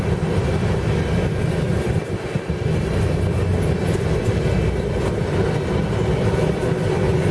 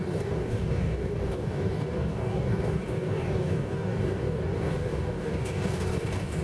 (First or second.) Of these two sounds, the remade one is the second